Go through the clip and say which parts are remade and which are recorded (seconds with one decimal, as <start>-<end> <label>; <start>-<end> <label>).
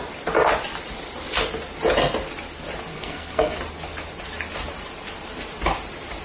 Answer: 0.0-2.9 recorded; 2.9-3.6 remade; 3.6-6.2 recorded